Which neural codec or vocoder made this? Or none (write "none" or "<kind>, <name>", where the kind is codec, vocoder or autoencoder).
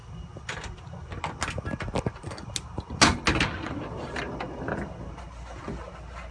none